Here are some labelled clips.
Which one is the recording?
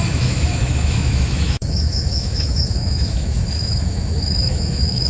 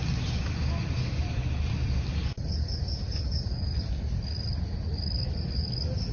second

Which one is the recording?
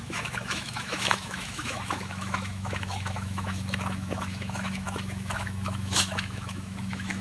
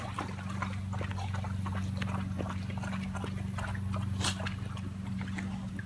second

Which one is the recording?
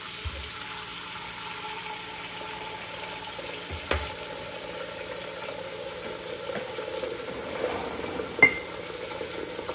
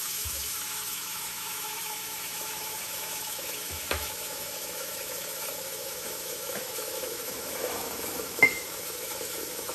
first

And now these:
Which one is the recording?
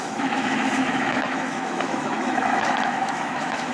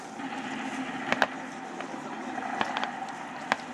second